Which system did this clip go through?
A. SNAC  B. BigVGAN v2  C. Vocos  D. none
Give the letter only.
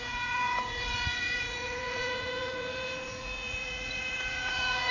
C